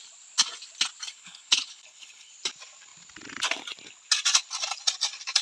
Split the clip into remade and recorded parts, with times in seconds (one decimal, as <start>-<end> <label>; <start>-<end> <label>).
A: 0.0-1.1 recorded; 1.1-2.3 remade; 2.3-5.4 recorded

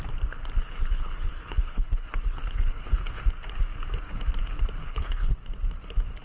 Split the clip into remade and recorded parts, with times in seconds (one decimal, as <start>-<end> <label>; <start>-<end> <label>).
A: 0.0-0.6 recorded; 0.6-3.2 remade; 3.2-4.8 recorded; 4.8-5.4 remade; 5.4-6.2 recorded

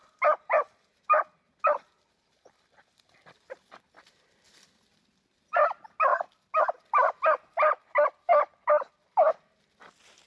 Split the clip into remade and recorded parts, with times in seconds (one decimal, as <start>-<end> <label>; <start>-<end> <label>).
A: 0.0-10.3 recorded

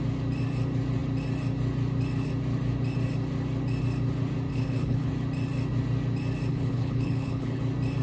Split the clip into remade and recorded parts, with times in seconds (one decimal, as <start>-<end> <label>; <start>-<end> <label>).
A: 0.0-4.5 recorded; 4.5-5.1 remade; 5.1-6.5 recorded; 6.5-7.6 remade; 7.6-8.0 recorded

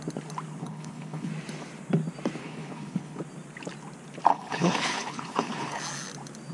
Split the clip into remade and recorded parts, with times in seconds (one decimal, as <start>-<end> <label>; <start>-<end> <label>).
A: 0.0-0.6 recorded; 0.6-1.3 remade; 1.3-2.4 recorded; 2.4-3.2 remade; 3.2-4.3 recorded; 4.3-5.8 remade; 5.8-6.5 recorded

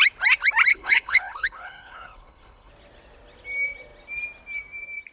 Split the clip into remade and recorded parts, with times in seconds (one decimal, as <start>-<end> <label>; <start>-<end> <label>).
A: 0.0-0.7 recorded; 0.7-2.7 remade; 2.7-5.1 recorded

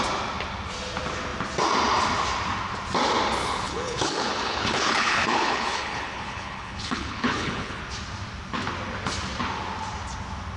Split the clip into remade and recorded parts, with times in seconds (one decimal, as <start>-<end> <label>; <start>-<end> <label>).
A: 0.0-3.4 recorded; 3.4-7.8 remade; 7.8-10.6 recorded